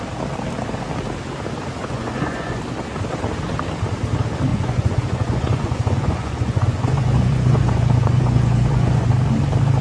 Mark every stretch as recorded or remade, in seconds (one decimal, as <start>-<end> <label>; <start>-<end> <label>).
0.0-1.8 recorded; 1.8-2.6 remade; 2.6-4.5 recorded; 4.5-9.1 remade; 9.1-9.8 recorded